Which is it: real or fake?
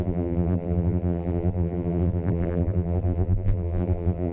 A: fake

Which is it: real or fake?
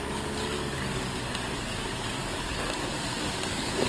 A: fake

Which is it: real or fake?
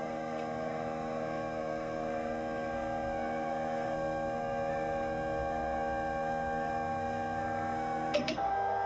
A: fake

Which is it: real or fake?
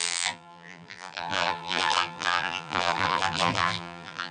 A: fake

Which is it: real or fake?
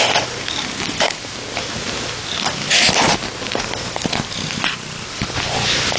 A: real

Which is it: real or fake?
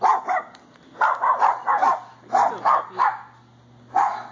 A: real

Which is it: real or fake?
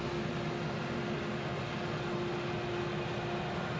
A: real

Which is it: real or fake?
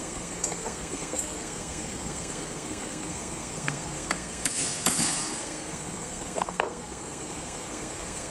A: fake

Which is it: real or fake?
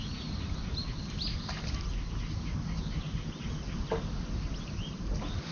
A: real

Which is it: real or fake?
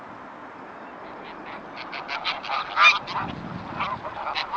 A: real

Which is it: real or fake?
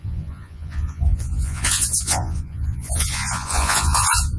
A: fake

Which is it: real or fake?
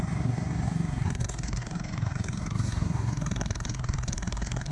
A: fake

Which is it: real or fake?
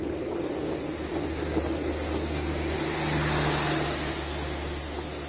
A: real